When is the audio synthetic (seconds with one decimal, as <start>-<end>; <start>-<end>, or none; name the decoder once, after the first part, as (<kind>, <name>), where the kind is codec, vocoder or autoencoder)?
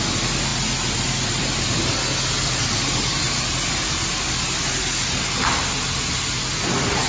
none